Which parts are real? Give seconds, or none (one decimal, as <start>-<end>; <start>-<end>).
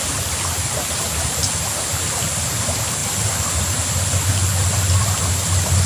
0.0-3.0